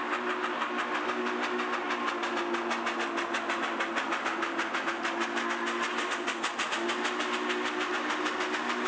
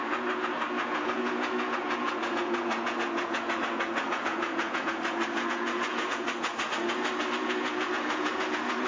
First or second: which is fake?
second